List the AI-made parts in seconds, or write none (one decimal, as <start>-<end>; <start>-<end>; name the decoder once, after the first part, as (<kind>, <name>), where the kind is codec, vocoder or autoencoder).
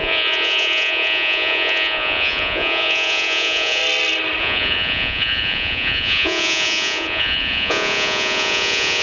0.0-3.8 (vocoder, Vocos); 4.4-9.0